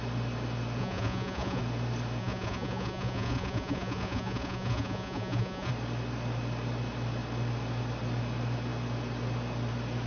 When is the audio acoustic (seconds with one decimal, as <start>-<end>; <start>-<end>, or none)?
0.0-0.8; 1.6-2.2; 5.7-10.1